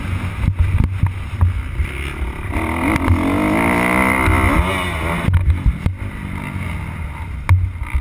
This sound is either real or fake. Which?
real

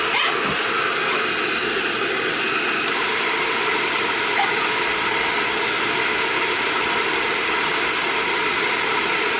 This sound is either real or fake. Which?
real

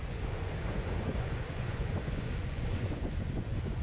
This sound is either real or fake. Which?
fake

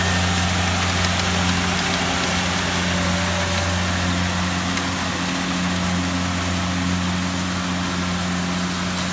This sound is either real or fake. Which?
real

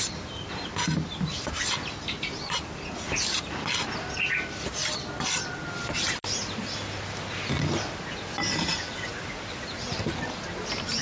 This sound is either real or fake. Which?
real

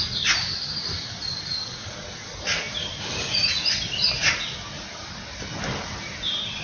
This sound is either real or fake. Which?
real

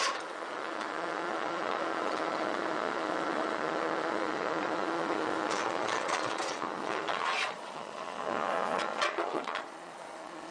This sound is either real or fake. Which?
fake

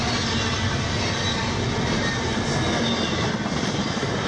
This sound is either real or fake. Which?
real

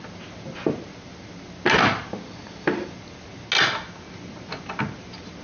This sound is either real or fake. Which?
real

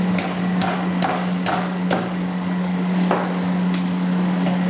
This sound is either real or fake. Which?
fake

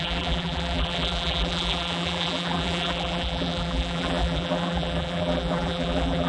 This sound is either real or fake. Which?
fake